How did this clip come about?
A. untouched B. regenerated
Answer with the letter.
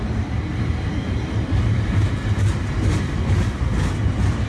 B